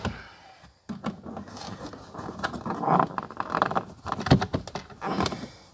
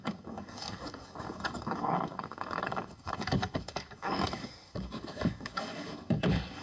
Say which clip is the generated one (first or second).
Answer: second